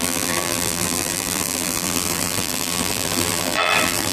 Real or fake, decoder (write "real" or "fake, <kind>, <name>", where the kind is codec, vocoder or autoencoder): fake, vocoder, BigVGAN v2